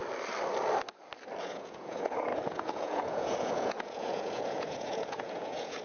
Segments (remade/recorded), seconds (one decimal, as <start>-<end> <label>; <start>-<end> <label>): 0.0-1.4 recorded; 1.4-5.8 remade